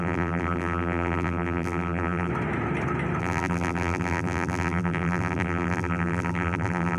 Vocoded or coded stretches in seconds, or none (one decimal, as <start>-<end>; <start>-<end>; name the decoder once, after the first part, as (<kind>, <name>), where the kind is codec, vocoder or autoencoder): 0.0-2.3 (vocoder, BigVGAN v2); 3.2-7.0